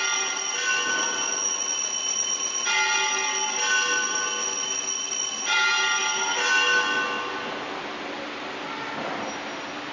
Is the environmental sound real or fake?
real